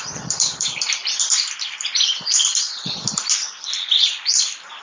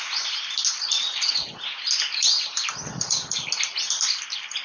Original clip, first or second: second